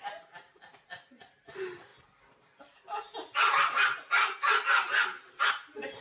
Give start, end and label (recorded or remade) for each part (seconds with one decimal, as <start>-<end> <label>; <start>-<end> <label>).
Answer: 0.0-6.0 recorded